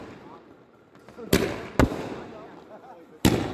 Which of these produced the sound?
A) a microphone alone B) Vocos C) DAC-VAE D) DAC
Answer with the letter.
A